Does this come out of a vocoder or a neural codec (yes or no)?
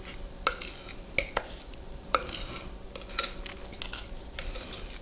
no